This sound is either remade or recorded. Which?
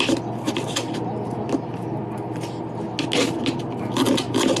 recorded